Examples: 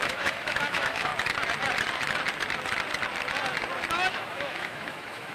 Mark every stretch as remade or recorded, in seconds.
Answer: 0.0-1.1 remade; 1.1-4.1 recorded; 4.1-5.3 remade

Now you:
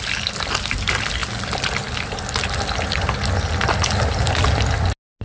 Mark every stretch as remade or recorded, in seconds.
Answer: 0.0-5.2 recorded

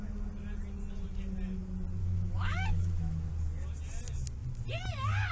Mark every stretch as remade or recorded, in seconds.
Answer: 0.0-2.0 recorded; 2.0-3.3 remade; 3.3-5.3 recorded